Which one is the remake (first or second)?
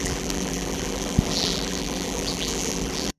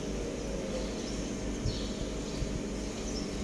first